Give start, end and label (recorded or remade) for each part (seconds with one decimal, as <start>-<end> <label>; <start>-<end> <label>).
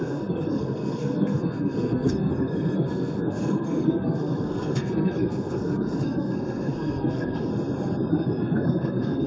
0.0-7.5 remade; 7.5-8.1 recorded; 8.1-9.3 remade